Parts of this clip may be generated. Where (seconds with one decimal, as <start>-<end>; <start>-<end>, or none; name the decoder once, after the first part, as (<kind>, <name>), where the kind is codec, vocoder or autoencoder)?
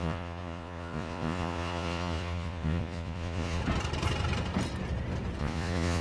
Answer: 0.0-3.6 (vocoder, Vocos); 5.4-6.0